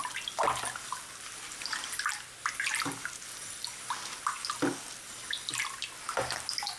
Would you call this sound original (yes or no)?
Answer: yes